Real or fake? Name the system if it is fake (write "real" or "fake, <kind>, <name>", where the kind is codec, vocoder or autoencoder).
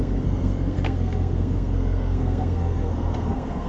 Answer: fake, codec, SNAC